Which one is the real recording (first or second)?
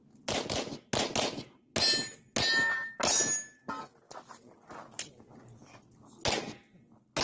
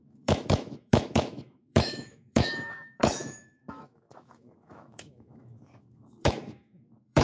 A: first